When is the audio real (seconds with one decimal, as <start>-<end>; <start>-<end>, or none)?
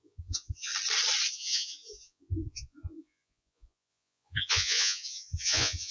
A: 0.7-1.3